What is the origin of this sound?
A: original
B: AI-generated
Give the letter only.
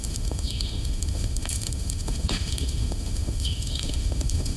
B